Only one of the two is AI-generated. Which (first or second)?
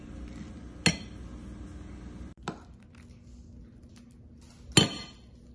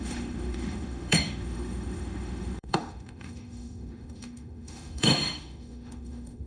second